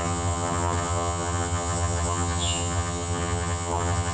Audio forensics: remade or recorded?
remade